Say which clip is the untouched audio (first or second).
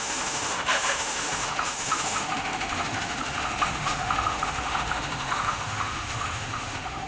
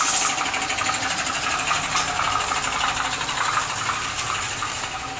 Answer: second